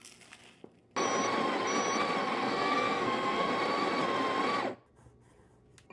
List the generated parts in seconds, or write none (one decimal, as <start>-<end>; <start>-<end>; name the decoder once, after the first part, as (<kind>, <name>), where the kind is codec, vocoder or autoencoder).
2.2-3.5 (codec, SNAC)